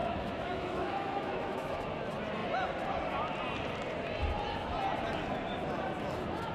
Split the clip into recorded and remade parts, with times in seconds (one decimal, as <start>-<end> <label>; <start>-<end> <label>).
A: 0.0-1.9 remade; 1.9-6.5 recorded